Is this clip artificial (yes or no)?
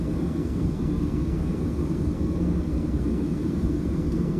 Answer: yes